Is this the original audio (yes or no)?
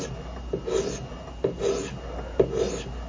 yes